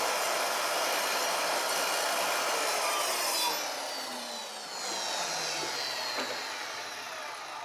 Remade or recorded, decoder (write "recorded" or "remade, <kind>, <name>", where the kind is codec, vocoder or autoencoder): recorded